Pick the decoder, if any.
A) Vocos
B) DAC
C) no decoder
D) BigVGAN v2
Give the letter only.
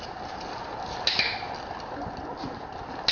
C